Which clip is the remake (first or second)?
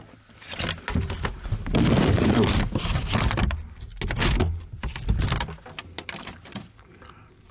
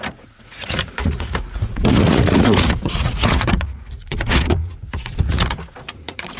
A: second